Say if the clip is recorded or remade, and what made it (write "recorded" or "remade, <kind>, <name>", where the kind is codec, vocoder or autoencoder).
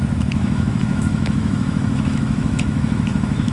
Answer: remade, autoencoder, DAC-VAE